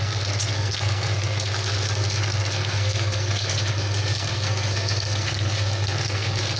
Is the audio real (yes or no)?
no